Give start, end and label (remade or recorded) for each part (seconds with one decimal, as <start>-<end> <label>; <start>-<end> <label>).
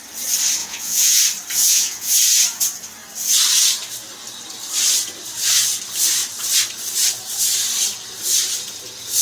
0.0-0.6 recorded; 0.6-1.2 remade; 1.2-1.6 recorded; 1.6-2.1 remade; 2.1-9.2 recorded